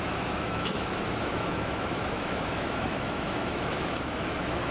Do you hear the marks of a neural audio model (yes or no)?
yes